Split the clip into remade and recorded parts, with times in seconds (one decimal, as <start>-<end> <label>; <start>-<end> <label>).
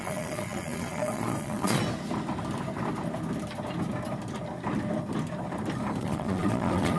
0.0-1.8 remade; 1.8-6.0 recorded; 6.0-7.0 remade